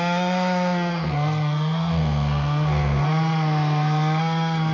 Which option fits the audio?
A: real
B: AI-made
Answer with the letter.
B